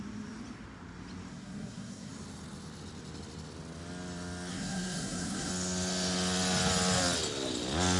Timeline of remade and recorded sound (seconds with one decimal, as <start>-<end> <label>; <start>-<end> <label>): 0.0-1.3 recorded; 1.3-2.1 remade; 2.1-4.5 recorded; 4.5-5.5 remade; 5.5-8.0 recorded